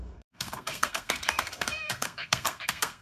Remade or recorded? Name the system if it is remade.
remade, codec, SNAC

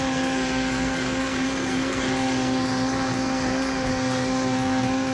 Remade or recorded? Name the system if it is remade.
remade, codec, SNAC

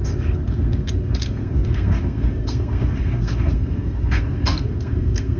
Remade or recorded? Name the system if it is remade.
remade, codec, SNAC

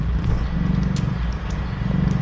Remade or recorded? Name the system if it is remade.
recorded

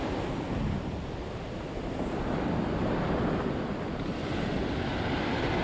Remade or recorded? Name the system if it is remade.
recorded